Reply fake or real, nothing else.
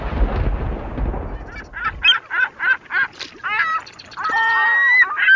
real